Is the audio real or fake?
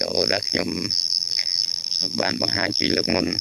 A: fake